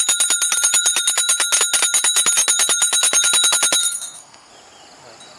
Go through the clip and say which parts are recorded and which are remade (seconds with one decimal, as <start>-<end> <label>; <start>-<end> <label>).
0.0-3.8 recorded; 3.8-4.5 remade; 4.5-5.4 recorded